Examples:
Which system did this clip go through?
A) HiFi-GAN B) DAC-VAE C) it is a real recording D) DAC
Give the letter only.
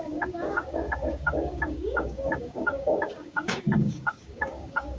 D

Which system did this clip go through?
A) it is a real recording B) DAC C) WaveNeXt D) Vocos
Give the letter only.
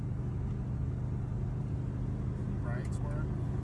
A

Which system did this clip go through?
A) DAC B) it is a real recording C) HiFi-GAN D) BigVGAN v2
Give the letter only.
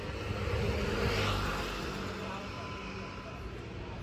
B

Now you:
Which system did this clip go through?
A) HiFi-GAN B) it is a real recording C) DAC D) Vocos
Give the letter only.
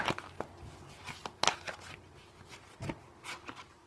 B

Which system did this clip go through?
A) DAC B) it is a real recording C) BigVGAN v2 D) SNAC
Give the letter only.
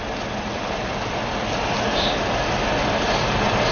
B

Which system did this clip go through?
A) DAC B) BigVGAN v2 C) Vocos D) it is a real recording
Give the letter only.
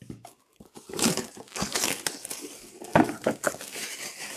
A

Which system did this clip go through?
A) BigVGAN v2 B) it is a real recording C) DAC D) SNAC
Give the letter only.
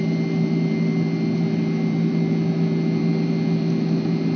B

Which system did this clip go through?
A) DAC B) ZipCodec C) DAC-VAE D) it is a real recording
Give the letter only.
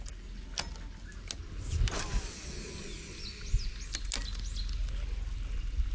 D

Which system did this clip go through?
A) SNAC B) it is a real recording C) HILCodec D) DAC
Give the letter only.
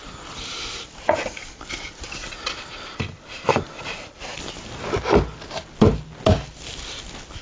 B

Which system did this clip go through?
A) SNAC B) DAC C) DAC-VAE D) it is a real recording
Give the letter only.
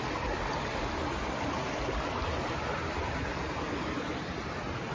D